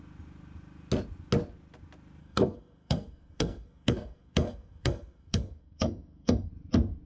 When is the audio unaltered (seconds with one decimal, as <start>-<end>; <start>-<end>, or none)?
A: 0.0-2.2; 6.5-7.1